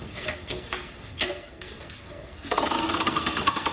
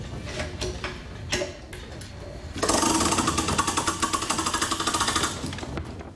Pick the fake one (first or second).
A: first